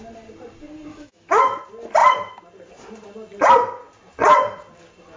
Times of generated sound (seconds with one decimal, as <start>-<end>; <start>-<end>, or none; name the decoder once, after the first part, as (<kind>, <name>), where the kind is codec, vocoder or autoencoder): 0.9-1.4 (autoencoder, DAC-VAE)